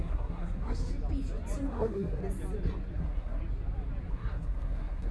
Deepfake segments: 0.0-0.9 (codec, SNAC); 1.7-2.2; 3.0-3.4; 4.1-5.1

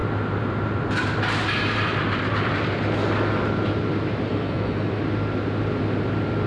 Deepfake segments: 4.3-4.9 (codec, SNAC)

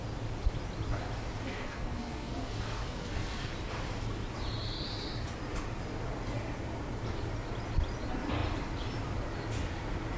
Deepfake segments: 1.5-3.5 (codec, SNAC)